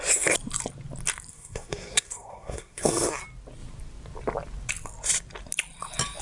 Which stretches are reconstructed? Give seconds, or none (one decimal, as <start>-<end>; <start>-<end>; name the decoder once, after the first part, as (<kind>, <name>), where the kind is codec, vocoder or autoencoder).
1.3-3.2 (codec, SNAC)